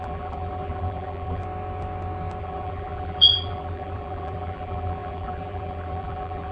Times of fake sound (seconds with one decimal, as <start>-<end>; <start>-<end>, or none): 0.0-1.4; 2.4-6.5